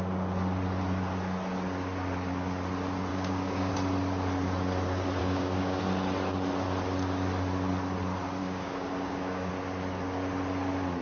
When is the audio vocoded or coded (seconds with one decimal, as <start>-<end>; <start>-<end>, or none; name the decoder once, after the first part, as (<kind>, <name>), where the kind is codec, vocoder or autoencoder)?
3.1-3.7 (codec, DAC); 5.2-5.8; 8.4-9.5